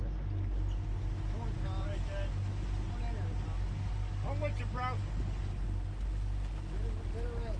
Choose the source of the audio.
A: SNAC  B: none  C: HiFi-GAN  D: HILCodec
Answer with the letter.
B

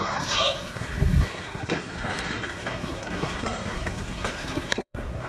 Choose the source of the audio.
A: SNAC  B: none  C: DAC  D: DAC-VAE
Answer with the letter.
A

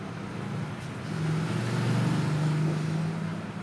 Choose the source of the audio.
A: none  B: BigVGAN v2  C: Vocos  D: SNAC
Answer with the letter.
A